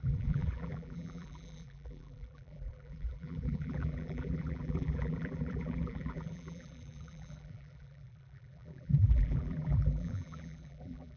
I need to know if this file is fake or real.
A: fake